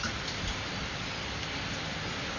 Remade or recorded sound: remade